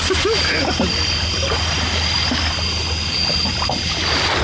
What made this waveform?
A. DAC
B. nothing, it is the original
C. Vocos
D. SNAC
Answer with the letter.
B